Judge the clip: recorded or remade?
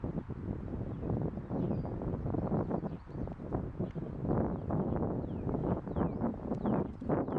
recorded